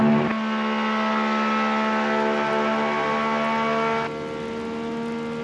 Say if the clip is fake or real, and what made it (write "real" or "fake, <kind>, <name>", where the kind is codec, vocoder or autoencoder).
real